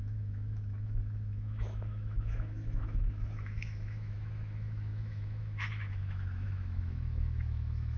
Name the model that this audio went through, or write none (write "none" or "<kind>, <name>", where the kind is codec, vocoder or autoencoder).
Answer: autoencoder, DAC-VAE